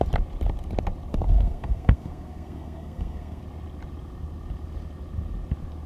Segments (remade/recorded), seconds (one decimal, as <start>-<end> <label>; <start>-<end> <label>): 0.0-1.1 recorded; 1.1-3.4 remade; 3.4-5.9 recorded